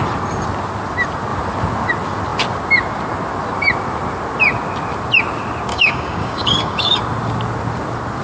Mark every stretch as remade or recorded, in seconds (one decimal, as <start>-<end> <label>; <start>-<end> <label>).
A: 0.0-5.7 recorded; 5.7-7.0 remade; 7.0-8.2 recorded